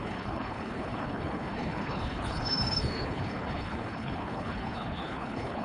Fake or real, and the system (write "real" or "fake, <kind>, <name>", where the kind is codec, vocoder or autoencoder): fake, codec, HILCodec